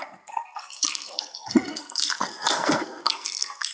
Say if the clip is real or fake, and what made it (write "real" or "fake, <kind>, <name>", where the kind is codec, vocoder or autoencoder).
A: fake, codec, SNAC